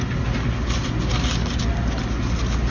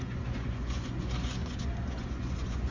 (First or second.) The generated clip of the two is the second